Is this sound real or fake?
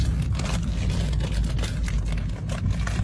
real